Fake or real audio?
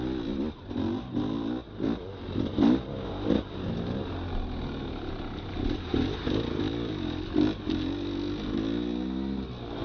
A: real